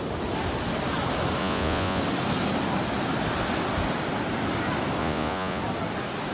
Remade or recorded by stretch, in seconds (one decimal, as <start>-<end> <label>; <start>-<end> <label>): 0.0-1.4 recorded; 1.4-2.0 remade; 2.0-5.0 recorded; 5.0-5.6 remade; 5.6-6.3 recorded